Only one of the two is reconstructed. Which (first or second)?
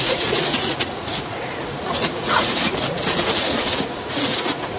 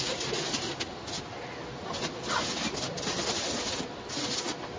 first